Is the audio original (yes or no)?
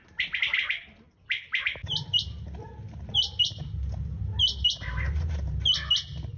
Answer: yes